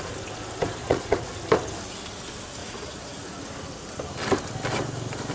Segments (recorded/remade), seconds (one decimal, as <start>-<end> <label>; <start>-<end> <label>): 0.0-0.8 recorded; 0.8-1.3 remade; 1.3-2.6 recorded; 2.6-3.4 remade; 3.4-5.3 recorded